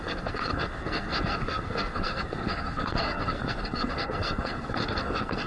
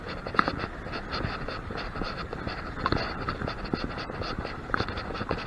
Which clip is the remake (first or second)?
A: first